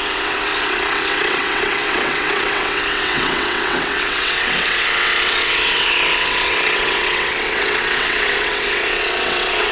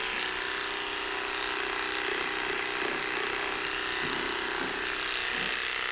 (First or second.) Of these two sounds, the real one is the second